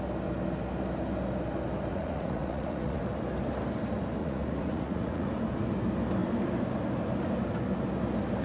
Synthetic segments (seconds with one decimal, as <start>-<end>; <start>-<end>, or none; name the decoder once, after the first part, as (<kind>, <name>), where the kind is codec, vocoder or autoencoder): 1.9-3.0 (vocoder, Vocos); 4.2-5.3